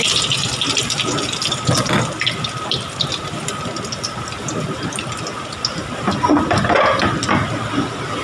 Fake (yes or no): no